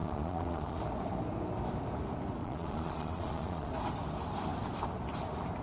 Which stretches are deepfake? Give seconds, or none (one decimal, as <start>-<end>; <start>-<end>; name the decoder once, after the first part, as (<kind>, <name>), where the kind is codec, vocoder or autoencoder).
0.0-0.8 (vocoder, Vocos); 2.4-3.7